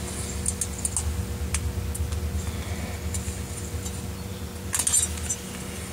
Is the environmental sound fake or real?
real